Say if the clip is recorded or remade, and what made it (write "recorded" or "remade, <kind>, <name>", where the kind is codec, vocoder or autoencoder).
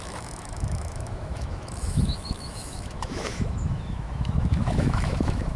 remade, autoencoder, DAC-VAE